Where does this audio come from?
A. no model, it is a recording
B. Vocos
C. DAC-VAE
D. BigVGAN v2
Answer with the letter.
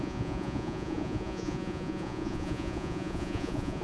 B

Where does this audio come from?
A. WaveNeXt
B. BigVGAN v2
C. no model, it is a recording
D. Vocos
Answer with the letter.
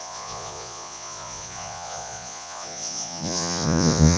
D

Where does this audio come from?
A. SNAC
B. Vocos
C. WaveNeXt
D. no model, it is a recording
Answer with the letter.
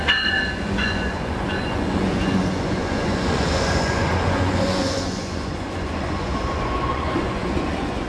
B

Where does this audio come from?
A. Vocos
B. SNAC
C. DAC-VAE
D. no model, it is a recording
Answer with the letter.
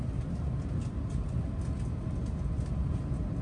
D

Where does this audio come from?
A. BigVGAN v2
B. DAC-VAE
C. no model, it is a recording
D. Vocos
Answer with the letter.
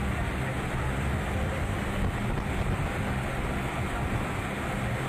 C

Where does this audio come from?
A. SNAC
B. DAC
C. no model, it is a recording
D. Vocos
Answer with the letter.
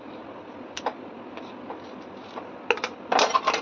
C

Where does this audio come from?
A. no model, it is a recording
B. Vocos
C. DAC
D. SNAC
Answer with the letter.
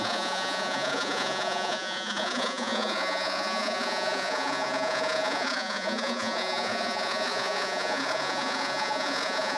B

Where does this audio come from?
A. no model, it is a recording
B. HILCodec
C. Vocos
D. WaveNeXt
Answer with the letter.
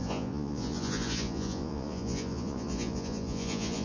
C